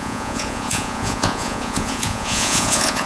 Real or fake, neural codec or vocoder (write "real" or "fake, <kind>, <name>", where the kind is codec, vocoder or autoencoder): fake, vocoder, Vocos